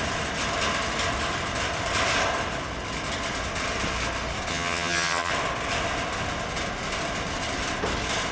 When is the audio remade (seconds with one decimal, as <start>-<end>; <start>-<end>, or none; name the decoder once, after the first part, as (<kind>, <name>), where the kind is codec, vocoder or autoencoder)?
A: 4.5-5.3 (vocoder, HiFi-GAN)